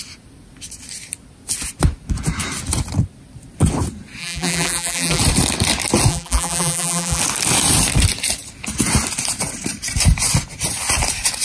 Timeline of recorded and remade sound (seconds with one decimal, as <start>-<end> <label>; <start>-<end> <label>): 0.0-4.2 recorded; 4.2-5.2 remade; 5.2-6.1 recorded; 6.1-7.2 remade; 7.2-11.4 recorded